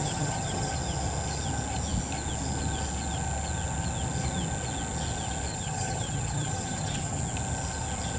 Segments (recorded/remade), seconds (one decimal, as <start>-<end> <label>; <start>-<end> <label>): 0.0-0.7 remade; 0.7-5.5 recorded; 5.5-7.2 remade; 7.2-8.2 recorded